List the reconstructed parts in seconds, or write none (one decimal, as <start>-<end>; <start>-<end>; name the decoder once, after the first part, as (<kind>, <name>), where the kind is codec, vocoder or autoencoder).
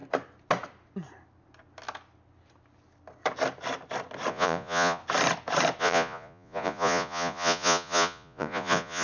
4.3-5.0 (vocoder, Vocos); 5.8-9.0